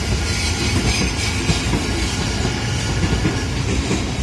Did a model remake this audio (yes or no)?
no